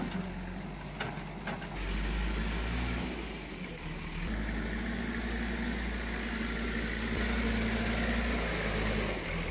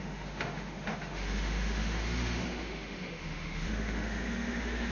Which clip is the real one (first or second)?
first